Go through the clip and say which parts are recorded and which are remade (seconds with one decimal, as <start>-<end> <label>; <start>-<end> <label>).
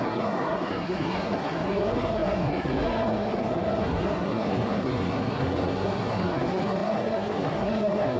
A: 0.0-8.2 remade